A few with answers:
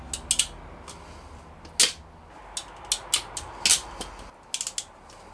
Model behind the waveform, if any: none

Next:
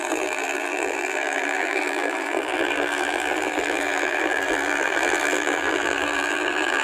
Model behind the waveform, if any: vocoder, BigVGAN v2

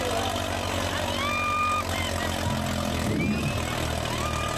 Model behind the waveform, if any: none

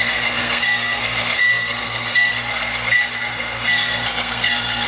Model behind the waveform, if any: codec, SNAC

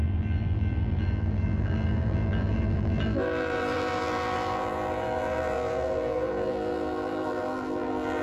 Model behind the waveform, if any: vocoder, BigVGAN v2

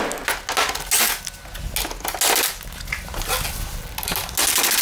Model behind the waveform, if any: none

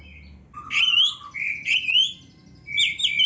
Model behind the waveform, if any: none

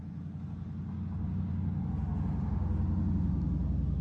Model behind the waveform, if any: none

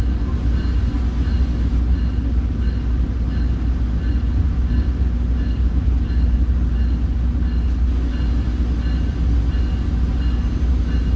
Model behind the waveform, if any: none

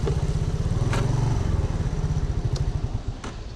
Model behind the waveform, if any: none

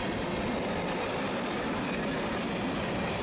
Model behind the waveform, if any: none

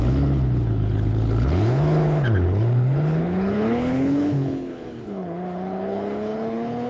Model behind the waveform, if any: codec, HILCodec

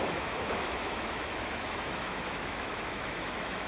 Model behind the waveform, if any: autoencoder, DAC-VAE